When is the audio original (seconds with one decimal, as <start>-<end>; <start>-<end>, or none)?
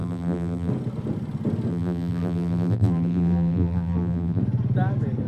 0.7-1.7; 4.4-5.3